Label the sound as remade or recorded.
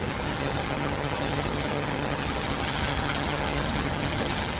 remade